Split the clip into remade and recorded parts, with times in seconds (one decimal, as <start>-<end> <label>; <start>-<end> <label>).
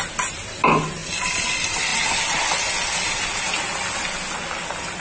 0.0-5.0 recorded